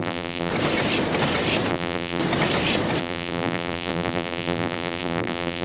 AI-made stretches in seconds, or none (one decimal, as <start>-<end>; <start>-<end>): 0.0-0.5; 1.7-2.2; 3.0-5.6